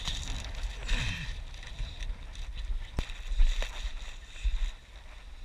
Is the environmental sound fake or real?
real